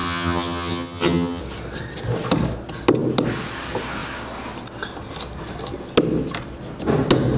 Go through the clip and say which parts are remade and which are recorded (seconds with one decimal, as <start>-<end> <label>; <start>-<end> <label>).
0.0-1.4 remade; 1.4-7.4 recorded